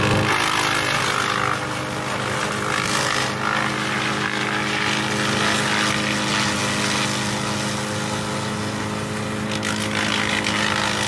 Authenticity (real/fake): real